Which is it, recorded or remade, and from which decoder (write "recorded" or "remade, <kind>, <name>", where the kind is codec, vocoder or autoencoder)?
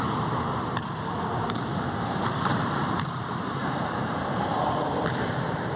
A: remade, vocoder, BigVGAN v2